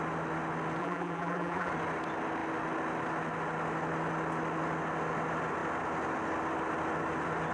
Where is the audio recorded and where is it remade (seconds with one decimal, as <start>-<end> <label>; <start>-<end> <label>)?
0.0-0.8 recorded; 0.8-1.7 remade; 1.7-7.5 recorded